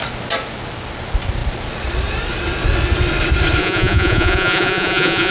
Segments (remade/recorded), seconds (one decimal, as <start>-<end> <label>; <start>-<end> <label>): 0.0-3.6 recorded; 3.6-5.3 remade